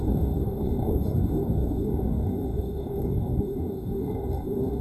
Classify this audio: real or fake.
fake